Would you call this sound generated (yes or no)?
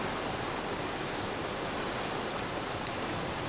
yes